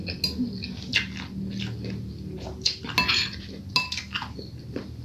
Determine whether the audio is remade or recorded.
recorded